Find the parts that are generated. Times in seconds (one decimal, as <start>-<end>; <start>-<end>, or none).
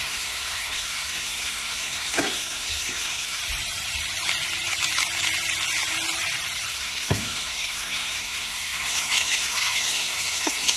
0.0-3.4; 6.7-10.8